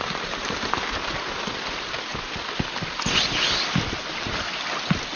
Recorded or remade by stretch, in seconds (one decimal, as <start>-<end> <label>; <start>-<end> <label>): 0.0-5.2 recorded